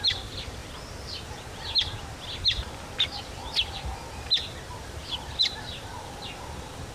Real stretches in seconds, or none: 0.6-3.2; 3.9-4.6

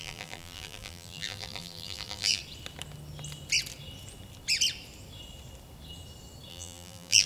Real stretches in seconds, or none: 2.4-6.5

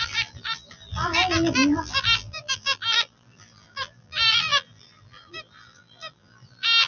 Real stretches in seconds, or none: none

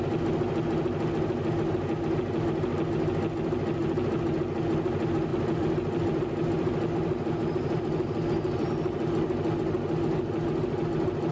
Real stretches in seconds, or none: 0.0-5.3; 8.7-11.3

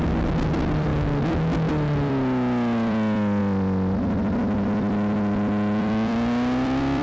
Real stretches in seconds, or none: 0.9-1.7; 3.4-5.8